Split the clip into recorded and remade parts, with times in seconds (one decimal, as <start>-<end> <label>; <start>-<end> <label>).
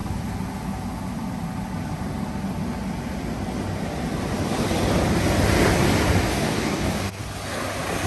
0.0-6.3 recorded; 6.3-7.2 remade; 7.2-8.1 recorded